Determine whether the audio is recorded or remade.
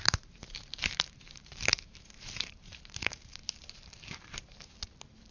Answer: remade